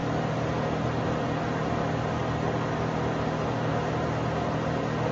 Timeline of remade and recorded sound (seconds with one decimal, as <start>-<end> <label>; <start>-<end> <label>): 0.0-5.1 recorded